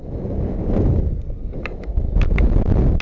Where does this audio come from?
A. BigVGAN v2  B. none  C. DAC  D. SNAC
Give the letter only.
B